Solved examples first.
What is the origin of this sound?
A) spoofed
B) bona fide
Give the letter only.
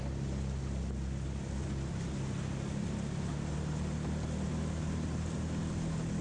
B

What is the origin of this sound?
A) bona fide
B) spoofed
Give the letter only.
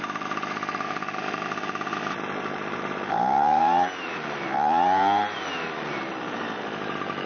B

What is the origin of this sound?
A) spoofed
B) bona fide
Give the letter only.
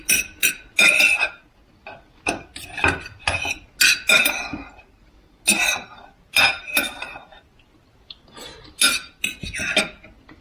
B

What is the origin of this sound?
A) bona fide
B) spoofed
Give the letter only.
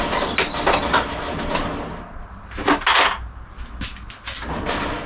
A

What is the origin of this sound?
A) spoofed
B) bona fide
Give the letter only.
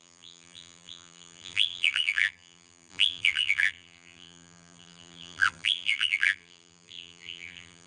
A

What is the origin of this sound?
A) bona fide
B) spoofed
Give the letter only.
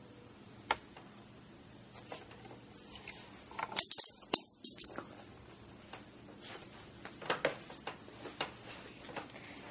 A